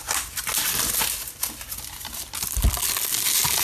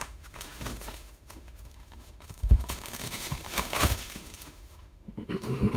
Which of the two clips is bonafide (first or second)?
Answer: first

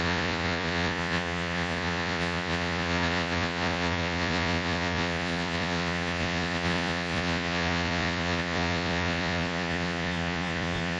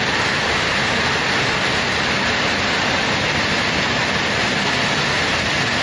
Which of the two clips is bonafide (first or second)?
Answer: second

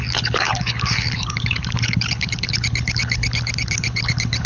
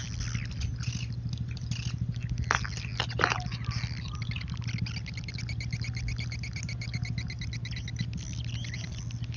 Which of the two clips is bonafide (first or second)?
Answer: second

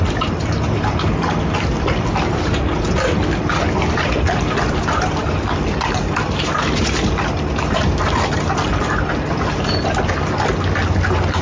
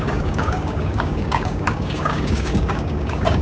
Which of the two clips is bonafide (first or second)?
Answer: first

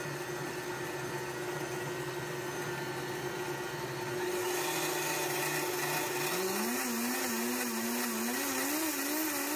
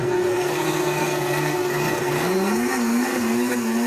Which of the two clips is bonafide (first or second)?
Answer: first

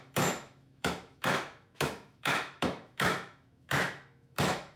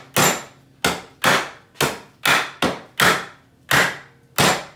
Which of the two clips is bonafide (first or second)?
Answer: second